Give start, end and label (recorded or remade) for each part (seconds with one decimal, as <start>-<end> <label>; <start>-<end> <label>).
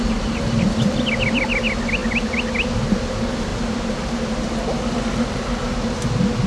0.0-6.5 recorded